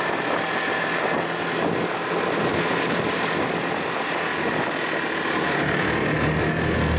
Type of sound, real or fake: real